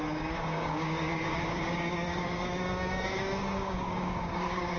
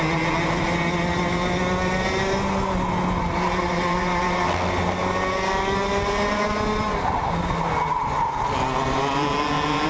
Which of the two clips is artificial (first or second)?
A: first